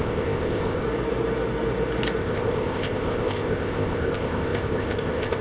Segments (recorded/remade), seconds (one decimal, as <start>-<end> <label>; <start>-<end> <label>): 0.0-0.8 remade; 0.8-2.2 recorded; 2.2-5.4 remade